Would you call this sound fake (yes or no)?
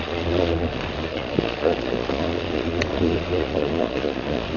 yes